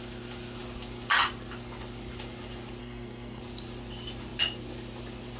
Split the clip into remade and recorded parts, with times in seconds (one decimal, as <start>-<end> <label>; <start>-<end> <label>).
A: 0.0-2.8 recorded; 2.8-3.4 remade; 3.4-5.4 recorded